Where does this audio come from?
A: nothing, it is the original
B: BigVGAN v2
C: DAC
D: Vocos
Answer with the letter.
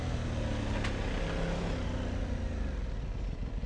A